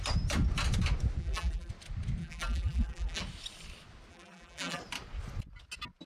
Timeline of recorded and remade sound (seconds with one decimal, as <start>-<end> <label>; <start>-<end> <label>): 0.0-1.2 recorded; 1.2-1.7 remade; 1.7-2.2 recorded; 2.2-3.2 remade; 3.2-4.1 recorded; 4.1-4.8 remade; 4.8-6.1 recorded